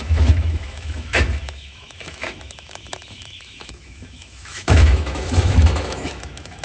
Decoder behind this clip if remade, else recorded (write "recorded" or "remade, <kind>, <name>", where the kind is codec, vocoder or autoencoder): remade, autoencoder, DAC-VAE